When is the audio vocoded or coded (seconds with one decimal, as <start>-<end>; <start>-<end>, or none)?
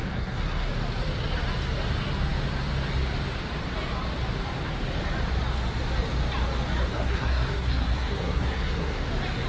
0.0-0.7; 6.9-9.1